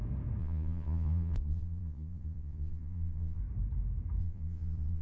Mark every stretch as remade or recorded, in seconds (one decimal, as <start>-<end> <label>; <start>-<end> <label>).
0.0-0.4 recorded; 0.4-3.4 remade; 3.4-4.2 recorded; 4.2-5.0 remade